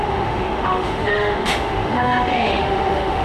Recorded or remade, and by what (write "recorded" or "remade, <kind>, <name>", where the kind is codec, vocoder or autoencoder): remade, autoencoder, DAC-VAE